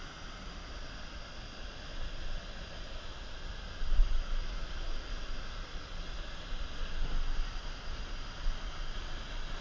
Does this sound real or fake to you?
real